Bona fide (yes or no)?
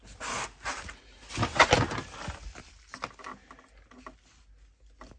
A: yes